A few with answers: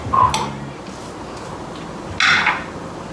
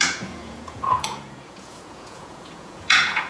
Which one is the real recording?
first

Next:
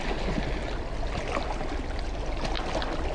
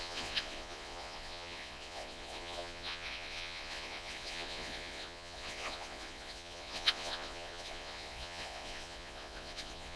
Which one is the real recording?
first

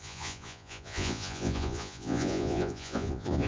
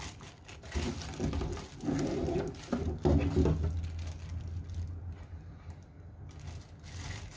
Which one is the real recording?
second